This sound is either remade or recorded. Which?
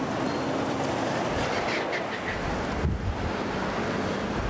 recorded